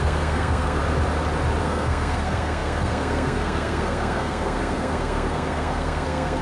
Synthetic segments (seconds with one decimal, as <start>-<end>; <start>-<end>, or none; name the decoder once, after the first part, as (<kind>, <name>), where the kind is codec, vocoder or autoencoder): 0.0-0.8 (codec, SNAC); 1.6-6.4